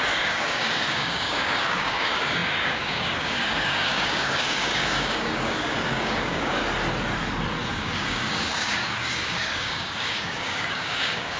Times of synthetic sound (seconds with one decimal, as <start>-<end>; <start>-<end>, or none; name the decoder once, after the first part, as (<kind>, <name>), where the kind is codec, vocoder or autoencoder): 0.0-6.6 (codec, DAC); 7.7-11.4